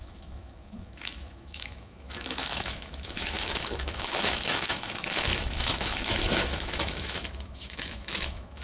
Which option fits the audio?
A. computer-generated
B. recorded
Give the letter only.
A